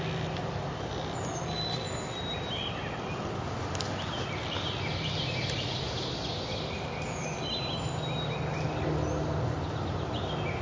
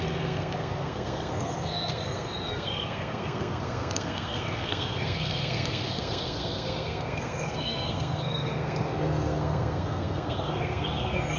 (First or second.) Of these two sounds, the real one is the first